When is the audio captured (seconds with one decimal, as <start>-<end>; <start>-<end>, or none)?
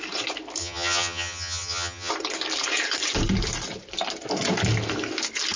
0.0-0.6; 2.1-5.6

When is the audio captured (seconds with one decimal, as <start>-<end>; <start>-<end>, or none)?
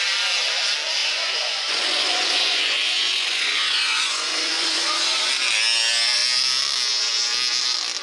0.0-1.0; 5.3-8.0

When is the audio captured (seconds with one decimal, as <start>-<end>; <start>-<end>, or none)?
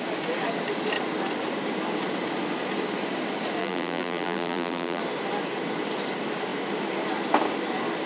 0.0-3.6; 5.0-8.1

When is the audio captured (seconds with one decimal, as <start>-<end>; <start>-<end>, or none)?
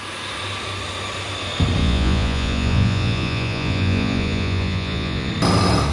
0.0-1.8; 5.3-5.9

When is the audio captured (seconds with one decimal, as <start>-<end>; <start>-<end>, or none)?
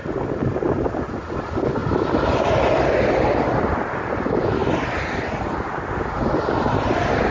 0.0-1.8; 3.8-7.3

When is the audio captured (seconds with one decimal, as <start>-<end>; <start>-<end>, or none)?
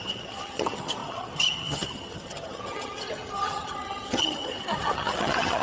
none